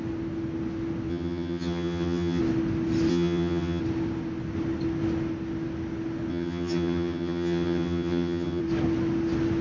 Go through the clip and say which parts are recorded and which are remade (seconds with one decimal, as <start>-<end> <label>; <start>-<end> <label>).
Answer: 0.0-1.1 recorded; 1.1-2.4 remade; 2.4-3.1 recorded; 3.1-3.8 remade; 3.8-6.3 recorded; 6.3-8.6 remade; 8.6-9.6 recorded